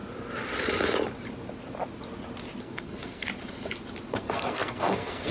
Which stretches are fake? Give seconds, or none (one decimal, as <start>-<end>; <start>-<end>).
2.6-3.3; 4.1-5.3